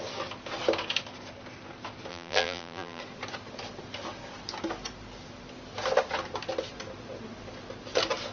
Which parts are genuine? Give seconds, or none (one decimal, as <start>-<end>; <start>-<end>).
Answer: 0.0-2.1; 3.0-8.3